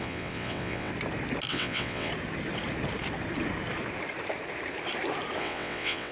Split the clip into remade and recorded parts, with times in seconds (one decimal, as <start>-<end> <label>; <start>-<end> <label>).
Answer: 0.0-0.9 remade; 0.9-1.5 recorded; 1.5-2.1 remade; 2.1-5.4 recorded; 5.4-6.1 remade